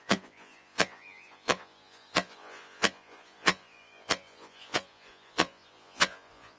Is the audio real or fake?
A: fake